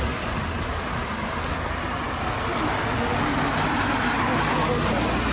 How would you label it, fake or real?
real